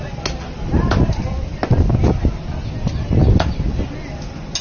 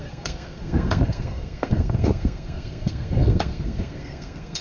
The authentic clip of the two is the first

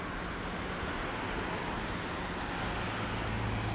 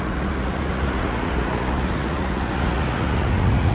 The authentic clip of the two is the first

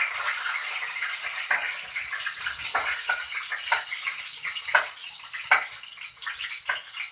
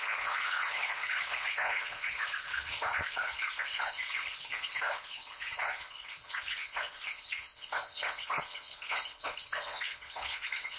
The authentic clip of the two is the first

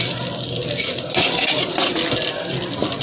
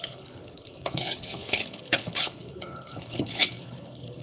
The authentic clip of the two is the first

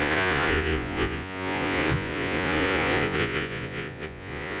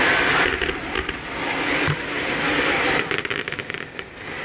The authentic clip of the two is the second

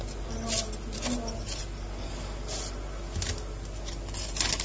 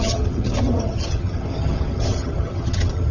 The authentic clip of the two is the first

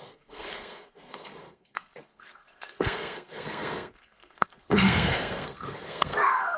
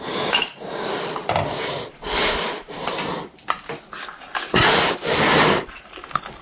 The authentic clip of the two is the second